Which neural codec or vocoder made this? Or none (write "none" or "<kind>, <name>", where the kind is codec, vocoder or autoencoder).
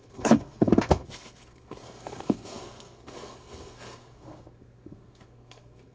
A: codec, SNAC